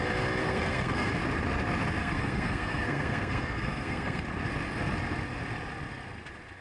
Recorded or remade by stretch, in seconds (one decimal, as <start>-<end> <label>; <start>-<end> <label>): 0.0-0.4 recorded; 0.4-1.1 remade; 1.1-2.0 recorded; 2.0-4.2 remade; 4.2-6.6 recorded

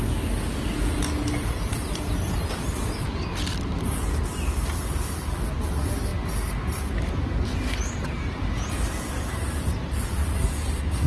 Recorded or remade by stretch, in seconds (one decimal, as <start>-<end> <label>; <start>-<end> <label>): 0.0-11.1 recorded

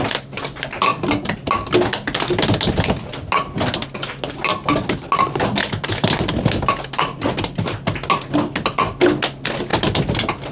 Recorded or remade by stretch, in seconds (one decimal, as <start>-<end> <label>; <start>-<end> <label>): 0.0-0.9 recorded; 0.9-1.7 remade; 1.7-5.6 recorded; 5.6-6.2 remade; 6.2-10.5 recorded